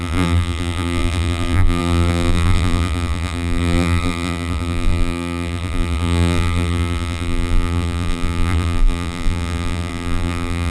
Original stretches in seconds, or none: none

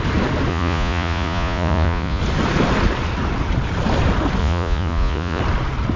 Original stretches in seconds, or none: 0.0-0.5; 2.2-4.4; 5.4-6.0

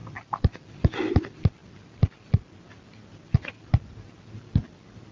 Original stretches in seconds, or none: 0.0-5.1

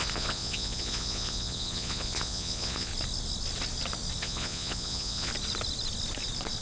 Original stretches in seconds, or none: 2.9-4.2; 5.3-6.6

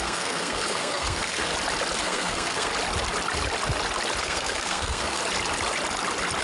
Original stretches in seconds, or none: 1.5-2.0; 2.7-4.2; 5.2-6.4

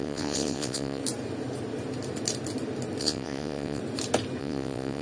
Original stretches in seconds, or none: 1.0-3.0; 3.8-4.4